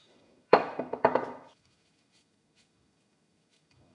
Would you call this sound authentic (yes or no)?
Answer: no